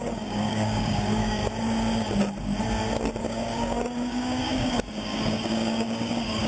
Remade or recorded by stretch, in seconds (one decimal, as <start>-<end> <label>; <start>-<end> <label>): 0.0-1.4 remade; 1.4-3.2 recorded; 3.2-6.5 remade